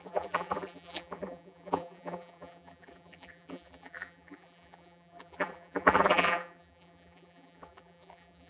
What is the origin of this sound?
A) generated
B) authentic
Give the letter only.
A